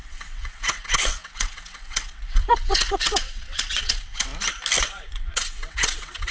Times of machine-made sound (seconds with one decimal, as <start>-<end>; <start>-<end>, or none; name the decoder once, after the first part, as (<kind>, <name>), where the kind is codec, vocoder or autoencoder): 0.0-4.3 (vocoder, WaveNeXt); 4.8-6.3